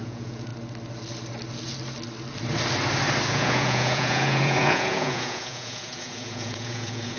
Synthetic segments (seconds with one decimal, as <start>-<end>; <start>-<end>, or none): 0.0-0.5; 3.3-7.2